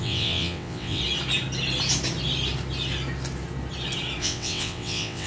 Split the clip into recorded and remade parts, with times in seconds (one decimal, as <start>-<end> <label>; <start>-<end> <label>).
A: 0.0-1.0 remade; 1.0-4.2 recorded; 4.2-5.3 remade